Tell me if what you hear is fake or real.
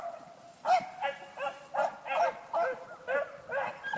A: real